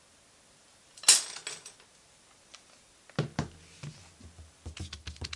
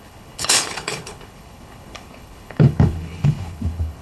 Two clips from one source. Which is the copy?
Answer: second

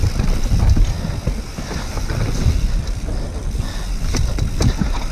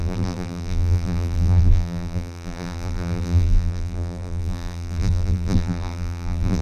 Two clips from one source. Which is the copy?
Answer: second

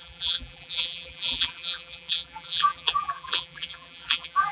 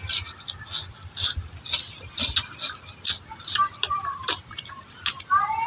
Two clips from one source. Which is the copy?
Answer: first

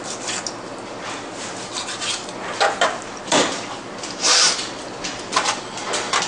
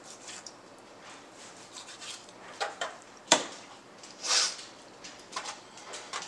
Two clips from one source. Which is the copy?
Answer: second